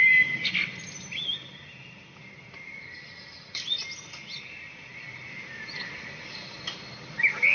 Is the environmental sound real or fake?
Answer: real